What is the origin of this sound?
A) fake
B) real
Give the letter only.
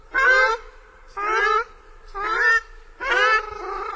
B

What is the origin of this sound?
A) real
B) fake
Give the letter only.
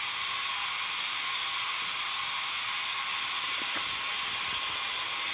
A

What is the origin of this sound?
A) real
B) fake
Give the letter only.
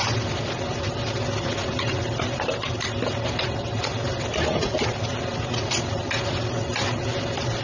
A